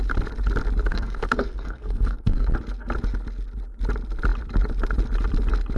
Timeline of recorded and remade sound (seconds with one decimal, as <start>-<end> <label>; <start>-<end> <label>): 0.0-0.9 recorded; 0.9-2.5 remade; 2.5-5.8 recorded

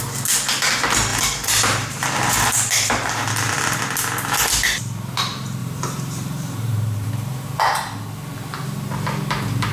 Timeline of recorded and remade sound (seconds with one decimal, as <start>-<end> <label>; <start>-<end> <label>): 0.0-1.1 recorded; 1.1-3.8 remade; 3.8-5.6 recorded; 5.6-7.1 remade; 7.1-9.7 recorded

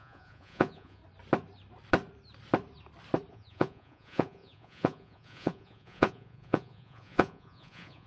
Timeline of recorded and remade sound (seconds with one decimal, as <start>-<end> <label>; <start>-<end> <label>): 0.0-1.0 remade; 1.0-3.3 recorded; 3.3-8.1 remade